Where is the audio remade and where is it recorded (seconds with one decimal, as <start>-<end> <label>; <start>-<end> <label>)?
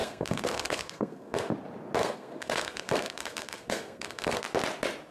0.0-1.5 remade; 1.5-2.0 recorded; 2.0-4.4 remade; 4.4-5.1 recorded